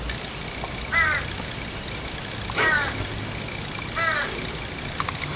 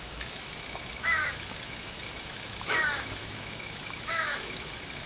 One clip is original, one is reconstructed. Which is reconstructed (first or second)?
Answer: second